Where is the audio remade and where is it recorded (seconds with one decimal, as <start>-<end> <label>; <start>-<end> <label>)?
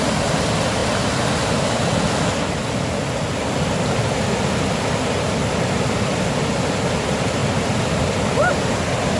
0.0-9.2 recorded